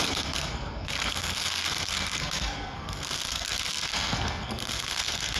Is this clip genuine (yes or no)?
no